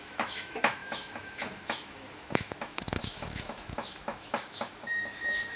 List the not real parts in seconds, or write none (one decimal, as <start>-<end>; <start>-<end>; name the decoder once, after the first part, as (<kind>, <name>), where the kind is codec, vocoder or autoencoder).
0.0-5.6 (autoencoder, DAC-VAE)